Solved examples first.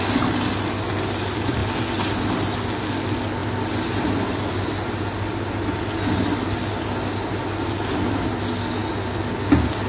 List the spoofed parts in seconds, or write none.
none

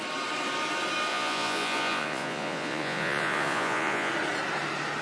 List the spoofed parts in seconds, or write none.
1.1-4.1 (vocoder, Vocos)

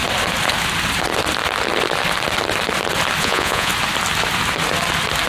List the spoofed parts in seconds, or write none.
3.2-3.7 (vocoder, Vocos)

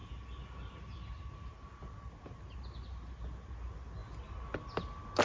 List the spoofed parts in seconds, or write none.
none